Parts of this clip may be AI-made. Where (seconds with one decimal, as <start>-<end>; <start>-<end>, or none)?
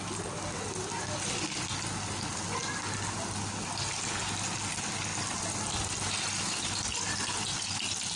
none